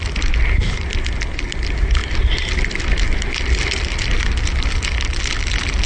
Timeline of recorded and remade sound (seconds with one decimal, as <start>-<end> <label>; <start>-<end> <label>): 0.0-5.9 recorded